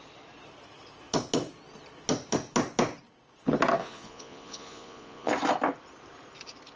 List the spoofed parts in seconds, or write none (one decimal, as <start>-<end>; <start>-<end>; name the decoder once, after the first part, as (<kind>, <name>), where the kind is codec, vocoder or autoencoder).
3.8-5.3 (vocoder, Vocos)